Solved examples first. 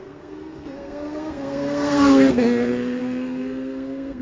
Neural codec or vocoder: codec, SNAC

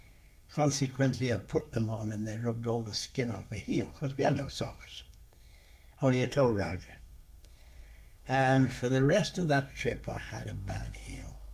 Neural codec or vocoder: codec, SNAC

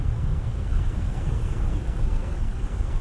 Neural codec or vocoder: codec, SNAC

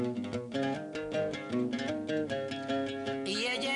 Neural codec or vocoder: none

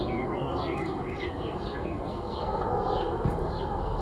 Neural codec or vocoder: codec, SNAC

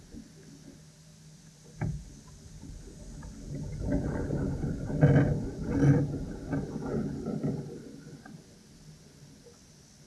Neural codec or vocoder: none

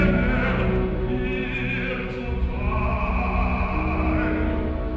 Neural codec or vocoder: none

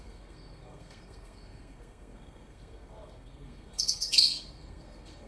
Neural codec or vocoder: codec, SNAC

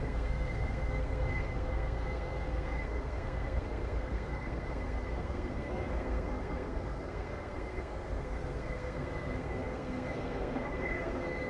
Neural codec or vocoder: codec, SNAC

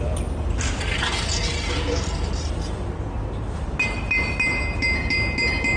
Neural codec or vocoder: none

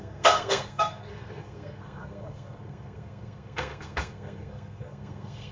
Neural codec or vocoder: codec, SNAC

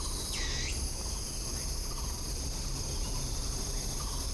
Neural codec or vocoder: none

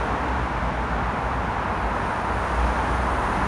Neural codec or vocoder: none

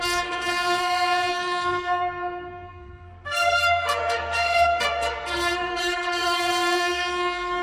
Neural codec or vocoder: codec, SNAC